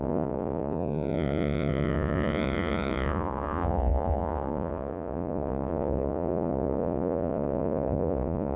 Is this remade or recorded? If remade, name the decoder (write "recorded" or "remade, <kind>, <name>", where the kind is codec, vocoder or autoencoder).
remade, vocoder, Vocos